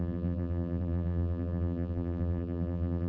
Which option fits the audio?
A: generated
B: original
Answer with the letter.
A